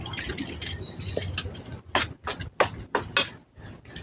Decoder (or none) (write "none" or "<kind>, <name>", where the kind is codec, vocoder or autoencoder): none